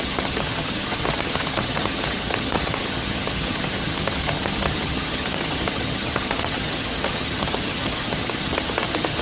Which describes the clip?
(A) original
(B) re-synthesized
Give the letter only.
B